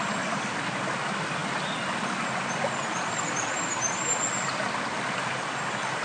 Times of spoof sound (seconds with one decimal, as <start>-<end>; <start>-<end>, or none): none